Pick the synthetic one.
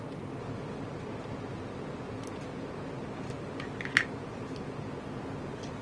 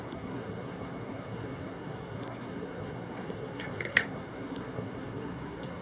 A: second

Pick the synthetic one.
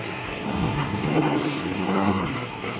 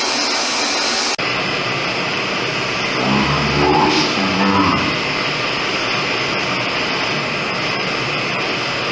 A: first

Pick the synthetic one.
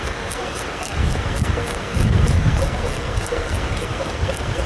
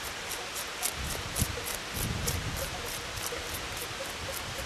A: first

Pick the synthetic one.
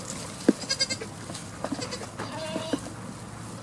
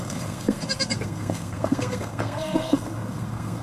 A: second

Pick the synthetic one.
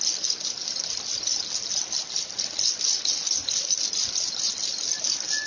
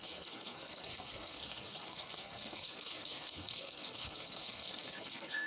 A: second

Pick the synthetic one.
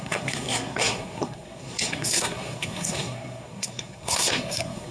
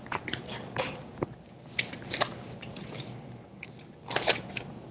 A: first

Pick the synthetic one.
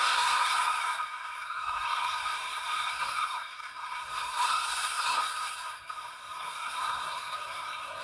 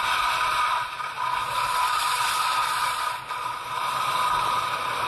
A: first